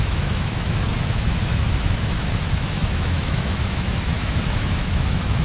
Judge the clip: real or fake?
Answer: fake